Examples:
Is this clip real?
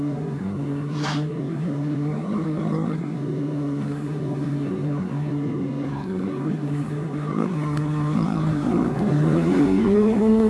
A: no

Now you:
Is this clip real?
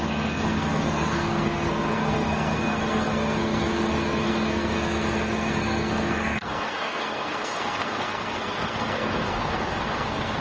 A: no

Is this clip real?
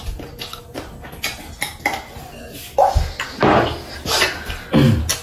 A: yes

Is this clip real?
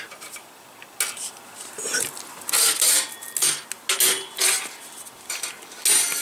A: yes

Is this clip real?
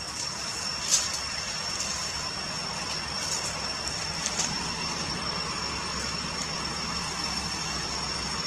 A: yes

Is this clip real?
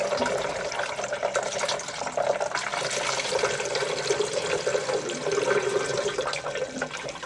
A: yes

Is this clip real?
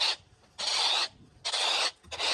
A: yes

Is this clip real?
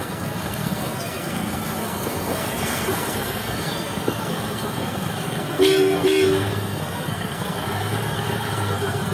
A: no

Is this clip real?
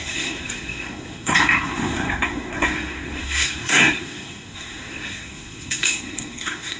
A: no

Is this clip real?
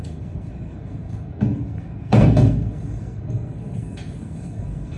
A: no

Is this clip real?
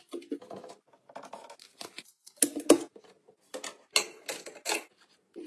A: yes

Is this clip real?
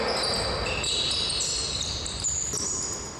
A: yes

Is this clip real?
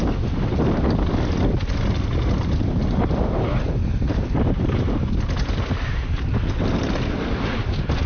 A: yes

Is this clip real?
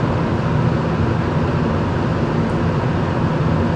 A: yes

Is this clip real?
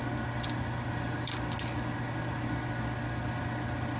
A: yes